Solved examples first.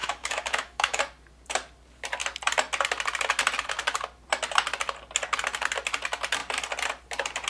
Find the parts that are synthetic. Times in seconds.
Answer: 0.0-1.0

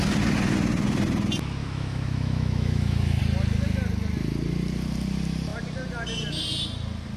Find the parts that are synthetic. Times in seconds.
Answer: 1.6-3.2

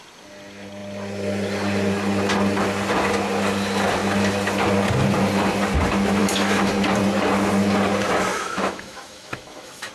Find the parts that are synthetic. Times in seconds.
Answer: 6.2-6.7; 8.3-9.9